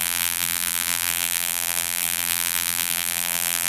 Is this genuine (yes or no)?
no